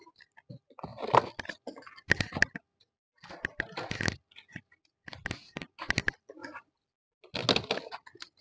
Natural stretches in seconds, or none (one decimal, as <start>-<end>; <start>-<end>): 0.0-8.4